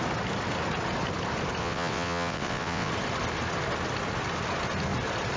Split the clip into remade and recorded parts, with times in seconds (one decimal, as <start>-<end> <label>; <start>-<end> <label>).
0.0-1.6 recorded; 1.6-2.9 remade; 2.9-5.4 recorded